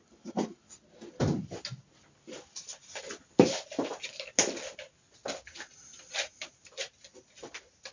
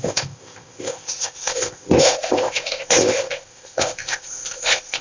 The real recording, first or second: first